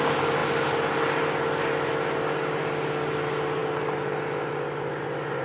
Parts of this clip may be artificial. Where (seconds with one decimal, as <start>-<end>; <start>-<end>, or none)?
none